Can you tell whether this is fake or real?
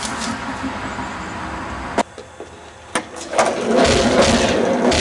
real